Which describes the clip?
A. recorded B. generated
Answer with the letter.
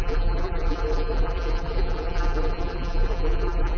B